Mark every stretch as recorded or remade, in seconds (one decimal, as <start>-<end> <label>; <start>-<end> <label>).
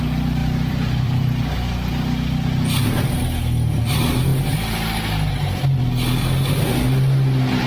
0.0-0.4 recorded; 0.4-1.2 remade; 1.2-7.7 recorded